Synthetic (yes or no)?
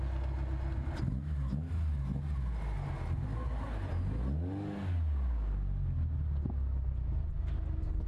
no